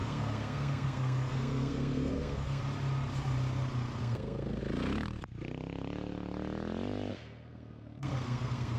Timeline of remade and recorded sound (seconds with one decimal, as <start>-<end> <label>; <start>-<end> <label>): 0.0-2.6 remade; 2.6-4.0 recorded; 4.0-4.6 remade; 4.6-7.1 recorded; 7.1-8.8 remade